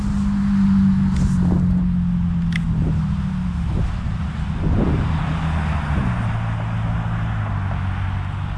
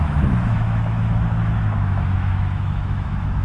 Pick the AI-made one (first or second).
second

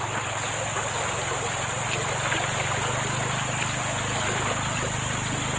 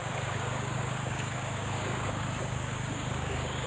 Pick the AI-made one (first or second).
second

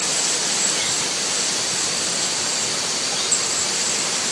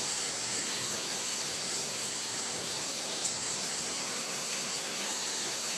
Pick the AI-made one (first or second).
second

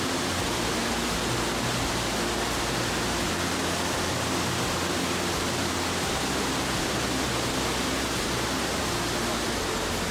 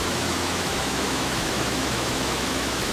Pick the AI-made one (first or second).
second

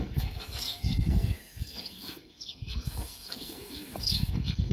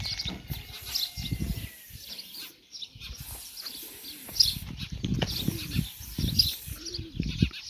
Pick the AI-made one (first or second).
first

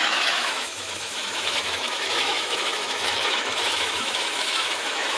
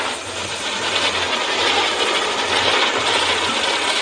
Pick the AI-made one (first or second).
first